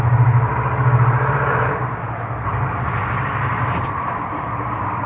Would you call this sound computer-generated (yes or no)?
yes